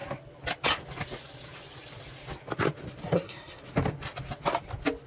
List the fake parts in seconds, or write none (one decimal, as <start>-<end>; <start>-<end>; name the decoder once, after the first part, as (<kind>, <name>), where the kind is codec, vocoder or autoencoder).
3.0-3.6 (codec, SNAC)